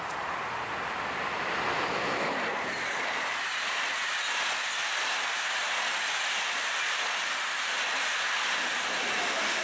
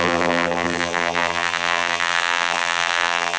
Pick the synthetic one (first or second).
second